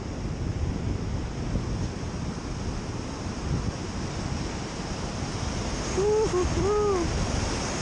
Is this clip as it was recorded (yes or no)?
yes